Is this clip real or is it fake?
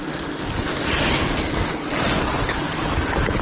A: real